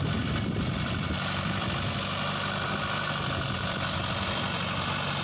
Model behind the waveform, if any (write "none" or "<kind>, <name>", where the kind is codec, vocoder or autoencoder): none